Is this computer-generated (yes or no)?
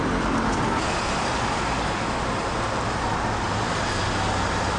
no